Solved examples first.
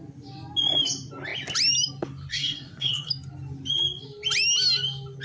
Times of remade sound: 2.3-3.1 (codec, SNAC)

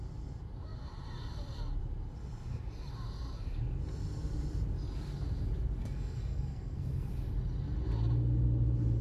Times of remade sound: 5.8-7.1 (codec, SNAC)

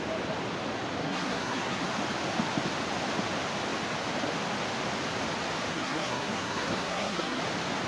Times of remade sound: 1.0-1.8 (codec, SNAC); 5.7-7.4

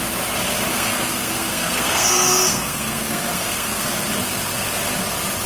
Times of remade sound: 0.7-4.0 (codec, SNAC)